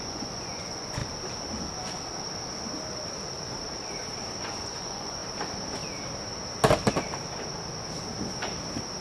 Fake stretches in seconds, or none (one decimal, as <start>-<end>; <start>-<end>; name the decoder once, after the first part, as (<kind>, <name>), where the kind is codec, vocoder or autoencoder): 0.0-1.0 (vocoder, Vocos); 4.4-5.2